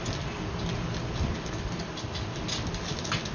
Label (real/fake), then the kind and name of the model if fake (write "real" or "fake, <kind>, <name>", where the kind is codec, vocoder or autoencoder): real